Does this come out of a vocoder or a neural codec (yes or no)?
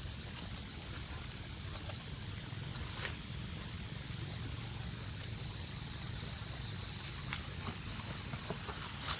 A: no